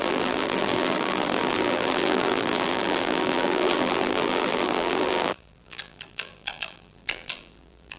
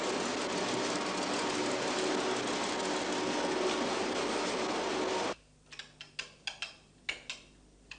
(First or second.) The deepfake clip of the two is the first